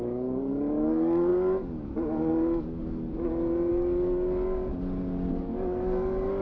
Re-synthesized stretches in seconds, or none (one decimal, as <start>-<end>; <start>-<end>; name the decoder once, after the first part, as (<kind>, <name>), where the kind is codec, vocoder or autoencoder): 0.0-3.1 (codec, DAC); 3.7-4.7; 5.3-6.4